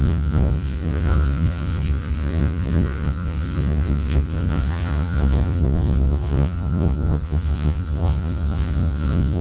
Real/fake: fake